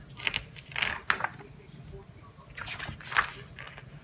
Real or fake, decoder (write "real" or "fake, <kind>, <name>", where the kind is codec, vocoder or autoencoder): real